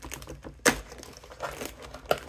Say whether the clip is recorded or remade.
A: recorded